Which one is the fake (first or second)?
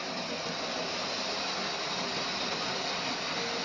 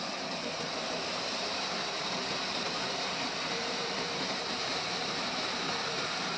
second